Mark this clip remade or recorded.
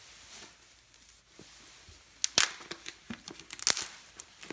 recorded